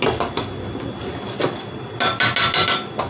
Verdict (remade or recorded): recorded